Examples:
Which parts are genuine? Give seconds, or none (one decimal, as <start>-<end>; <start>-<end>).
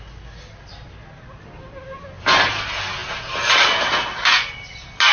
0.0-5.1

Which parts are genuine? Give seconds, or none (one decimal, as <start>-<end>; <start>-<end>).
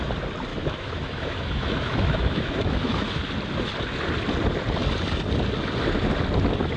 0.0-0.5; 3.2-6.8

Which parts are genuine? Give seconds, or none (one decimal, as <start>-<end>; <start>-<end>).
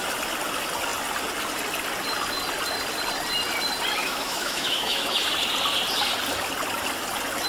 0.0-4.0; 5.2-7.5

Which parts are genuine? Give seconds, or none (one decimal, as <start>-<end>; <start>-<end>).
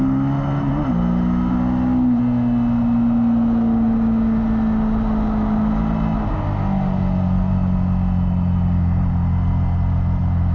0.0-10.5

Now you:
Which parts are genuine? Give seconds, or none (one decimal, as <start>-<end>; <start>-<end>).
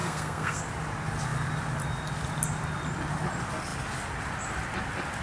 0.6-5.2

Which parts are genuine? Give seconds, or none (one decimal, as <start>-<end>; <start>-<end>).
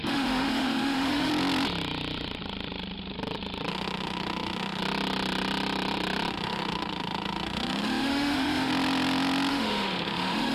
1.3-3.7; 4.8-6.3; 8.7-9.5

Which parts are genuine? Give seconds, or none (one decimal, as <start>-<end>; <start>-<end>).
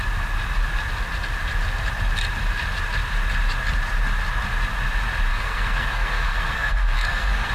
0.0-5.3